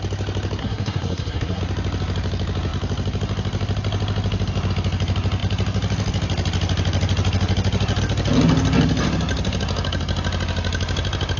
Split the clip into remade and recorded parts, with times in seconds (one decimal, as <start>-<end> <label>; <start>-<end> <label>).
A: 0.0-0.6 recorded; 0.6-1.6 remade; 1.6-11.4 recorded